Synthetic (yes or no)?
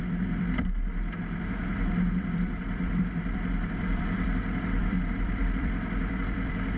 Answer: yes